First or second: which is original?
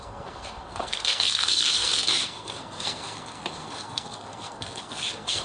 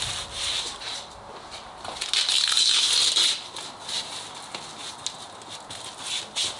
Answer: second